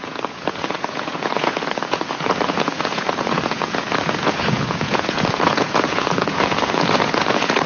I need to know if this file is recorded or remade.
remade